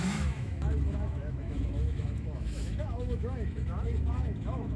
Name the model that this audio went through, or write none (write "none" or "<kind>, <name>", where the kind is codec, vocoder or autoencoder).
autoencoder, DAC-VAE